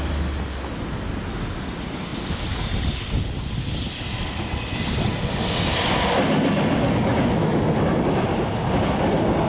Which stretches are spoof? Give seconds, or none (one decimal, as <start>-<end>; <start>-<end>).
7.1-7.6